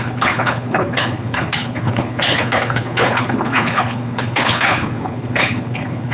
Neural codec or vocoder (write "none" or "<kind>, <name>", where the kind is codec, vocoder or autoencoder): codec, HILCodec